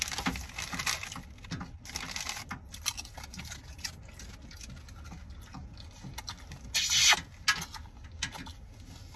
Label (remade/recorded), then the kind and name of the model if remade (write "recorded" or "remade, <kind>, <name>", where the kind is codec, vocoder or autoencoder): recorded